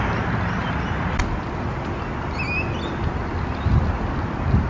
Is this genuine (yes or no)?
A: yes